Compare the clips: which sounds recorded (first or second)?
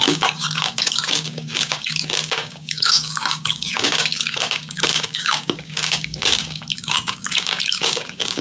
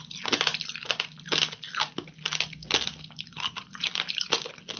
second